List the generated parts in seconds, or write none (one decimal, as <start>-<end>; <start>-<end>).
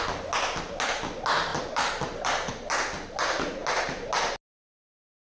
1.5-2.5